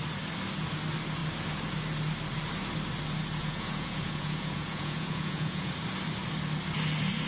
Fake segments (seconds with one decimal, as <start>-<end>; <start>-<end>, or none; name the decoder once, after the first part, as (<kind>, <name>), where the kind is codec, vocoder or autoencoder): 3.4-5.7 (vocoder, Vocos)